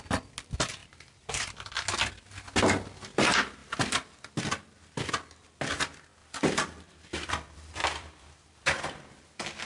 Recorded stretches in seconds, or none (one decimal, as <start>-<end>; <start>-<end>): 0.0-0.8; 1.7-3.6; 4.4-6.2